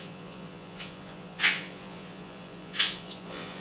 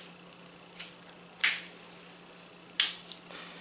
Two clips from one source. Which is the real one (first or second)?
second